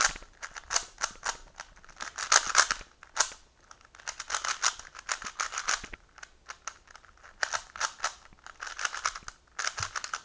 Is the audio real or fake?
real